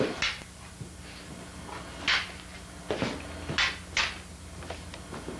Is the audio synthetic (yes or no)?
no